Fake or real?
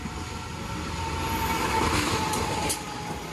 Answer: real